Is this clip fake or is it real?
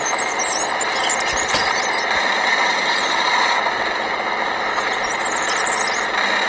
fake